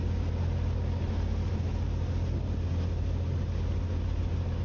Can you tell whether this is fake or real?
real